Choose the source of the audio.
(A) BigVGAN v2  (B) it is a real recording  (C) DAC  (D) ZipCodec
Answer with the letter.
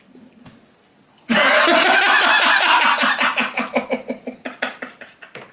B